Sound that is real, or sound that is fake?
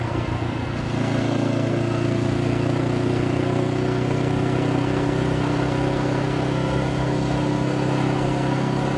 fake